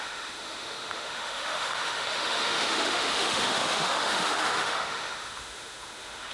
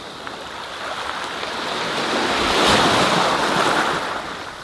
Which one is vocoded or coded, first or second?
first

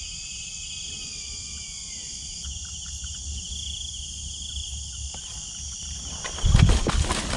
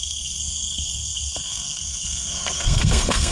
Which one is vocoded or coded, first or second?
second